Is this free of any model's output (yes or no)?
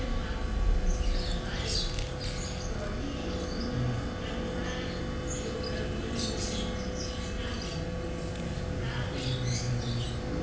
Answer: yes